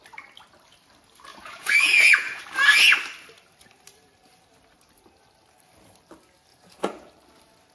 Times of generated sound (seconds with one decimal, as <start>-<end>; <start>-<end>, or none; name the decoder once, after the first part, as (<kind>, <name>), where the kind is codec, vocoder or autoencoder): 1.3-2.4 (vocoder, Vocos); 6.5-7.1